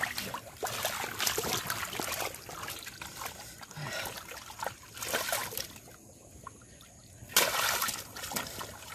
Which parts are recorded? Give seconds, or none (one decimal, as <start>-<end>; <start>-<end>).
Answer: 0.0-8.9